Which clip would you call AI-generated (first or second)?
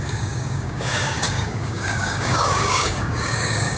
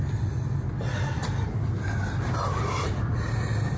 first